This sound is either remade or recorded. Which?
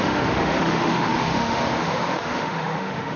remade